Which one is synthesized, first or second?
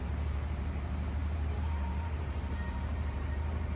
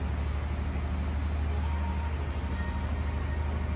first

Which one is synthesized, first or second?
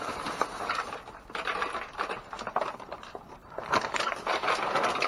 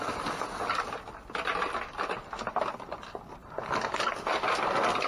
first